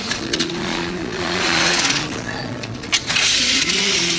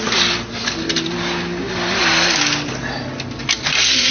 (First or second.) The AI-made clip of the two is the first